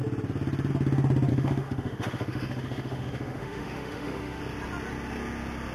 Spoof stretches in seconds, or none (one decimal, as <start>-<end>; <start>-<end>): 1.3-4.4